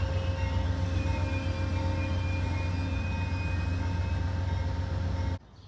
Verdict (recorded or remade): recorded